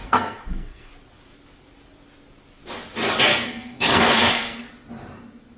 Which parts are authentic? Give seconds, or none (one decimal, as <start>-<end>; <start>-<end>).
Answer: 0.9-3.3; 4.7-5.6